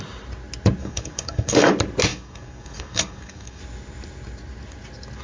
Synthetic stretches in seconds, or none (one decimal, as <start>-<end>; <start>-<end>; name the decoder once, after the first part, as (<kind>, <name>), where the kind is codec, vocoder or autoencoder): 0.8-1.7 (codec, DAC); 2.1-3.6